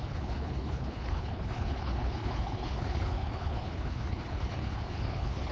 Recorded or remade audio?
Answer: remade